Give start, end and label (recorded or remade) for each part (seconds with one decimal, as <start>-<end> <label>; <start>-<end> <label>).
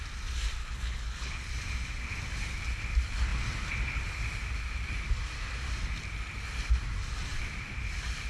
0.0-0.6 recorded; 0.6-1.5 remade; 1.5-8.3 recorded